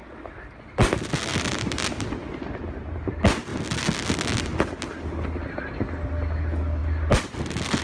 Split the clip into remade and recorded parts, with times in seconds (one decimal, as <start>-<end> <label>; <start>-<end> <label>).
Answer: 0.0-7.8 recorded